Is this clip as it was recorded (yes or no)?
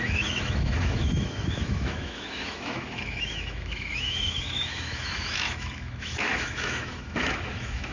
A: no